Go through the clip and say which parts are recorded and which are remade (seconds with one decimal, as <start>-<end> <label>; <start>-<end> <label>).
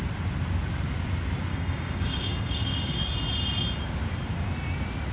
0.0-1.5 recorded; 1.5-2.9 remade; 2.9-5.1 recorded